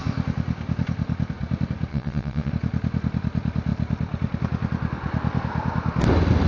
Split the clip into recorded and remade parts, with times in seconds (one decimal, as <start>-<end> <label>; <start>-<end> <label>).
0.0-1.9 recorded; 1.9-2.5 remade; 2.5-6.5 recorded